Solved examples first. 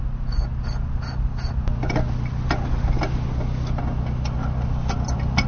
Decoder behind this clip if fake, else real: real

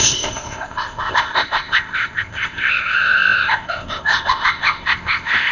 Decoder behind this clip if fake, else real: fake, codec, ZipCodec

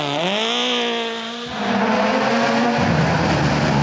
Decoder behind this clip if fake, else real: real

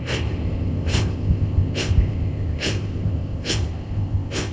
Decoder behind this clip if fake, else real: fake, codec, ZipCodec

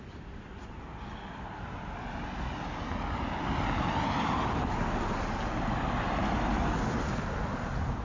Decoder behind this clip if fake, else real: real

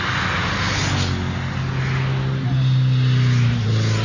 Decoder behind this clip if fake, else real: real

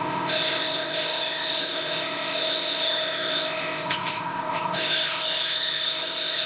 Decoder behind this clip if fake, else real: fake, codec, ZipCodec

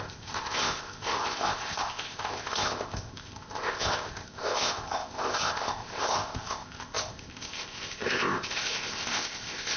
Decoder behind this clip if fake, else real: fake, codec, ZipCodec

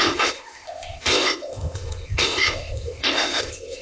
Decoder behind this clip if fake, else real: fake, codec, ZipCodec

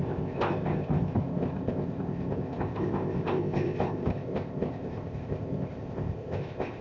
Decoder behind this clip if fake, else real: fake, codec, ZipCodec